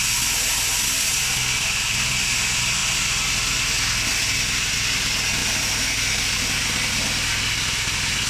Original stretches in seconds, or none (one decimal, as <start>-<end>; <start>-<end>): 0.0-8.3